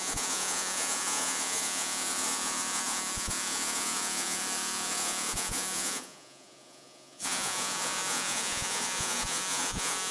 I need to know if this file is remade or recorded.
remade